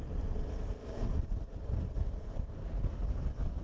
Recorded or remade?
recorded